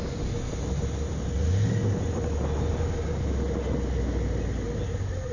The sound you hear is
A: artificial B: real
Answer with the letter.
B